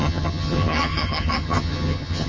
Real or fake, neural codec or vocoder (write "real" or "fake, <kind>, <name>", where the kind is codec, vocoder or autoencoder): fake, vocoder, HiFi-GAN